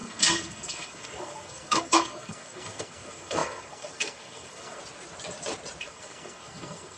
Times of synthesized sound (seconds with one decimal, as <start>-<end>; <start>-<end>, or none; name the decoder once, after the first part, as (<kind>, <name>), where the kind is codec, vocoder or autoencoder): 0.0-4.8 (codec, SNAC); 5.8-7.0

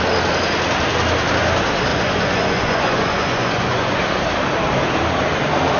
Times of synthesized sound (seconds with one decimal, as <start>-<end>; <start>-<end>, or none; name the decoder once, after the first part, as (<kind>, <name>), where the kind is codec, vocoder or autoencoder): 1.9-4.0 (vocoder, Vocos)

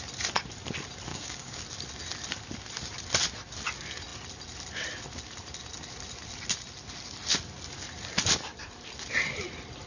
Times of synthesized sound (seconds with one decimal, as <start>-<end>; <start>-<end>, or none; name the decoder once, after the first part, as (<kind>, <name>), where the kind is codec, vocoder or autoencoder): 1.1-1.6 (codec, DAC)

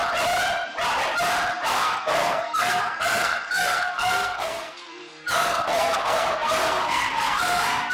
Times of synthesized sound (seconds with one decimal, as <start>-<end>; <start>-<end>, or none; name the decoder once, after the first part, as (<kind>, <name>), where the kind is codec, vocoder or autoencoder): 1.7-7.9 (codec, SNAC)

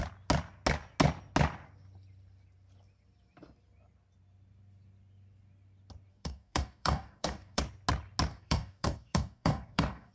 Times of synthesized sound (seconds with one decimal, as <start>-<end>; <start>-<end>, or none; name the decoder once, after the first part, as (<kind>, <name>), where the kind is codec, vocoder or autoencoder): 6.1-7.6 (codec, DAC); 8.3-10.1